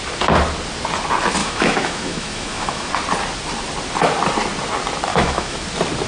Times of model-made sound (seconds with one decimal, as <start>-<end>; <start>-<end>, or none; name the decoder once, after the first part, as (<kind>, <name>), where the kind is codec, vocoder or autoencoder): 1.4-2.9 (autoencoder, DAC-VAE); 5.1-5.6